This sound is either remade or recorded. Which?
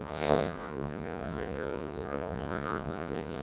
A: remade